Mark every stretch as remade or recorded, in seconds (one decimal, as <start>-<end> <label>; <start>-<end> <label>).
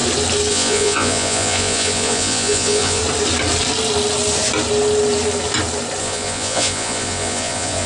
0.0-0.5 recorded; 0.5-3.0 remade; 3.0-6.0 recorded; 6.0-7.9 remade